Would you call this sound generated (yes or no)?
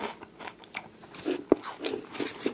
no